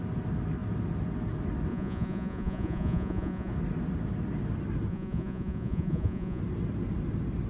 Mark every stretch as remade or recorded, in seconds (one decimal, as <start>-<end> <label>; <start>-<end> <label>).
0.0-1.7 recorded; 1.7-3.5 remade; 3.5-4.9 recorded; 4.9-6.4 remade; 6.4-7.5 recorded